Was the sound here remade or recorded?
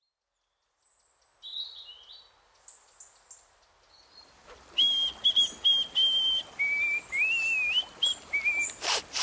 recorded